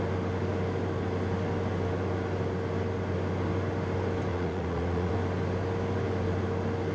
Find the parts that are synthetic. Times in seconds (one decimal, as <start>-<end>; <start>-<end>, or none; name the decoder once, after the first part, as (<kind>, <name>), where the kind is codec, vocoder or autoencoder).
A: 4.3-5.1 (vocoder, Vocos)